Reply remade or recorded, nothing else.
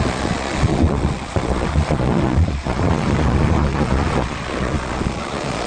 remade